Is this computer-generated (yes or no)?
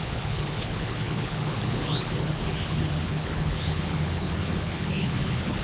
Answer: yes